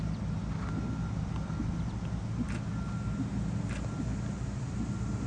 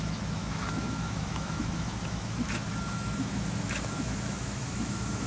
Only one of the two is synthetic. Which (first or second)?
second